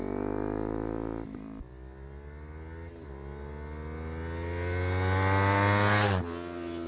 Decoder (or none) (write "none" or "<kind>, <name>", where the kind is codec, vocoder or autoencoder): none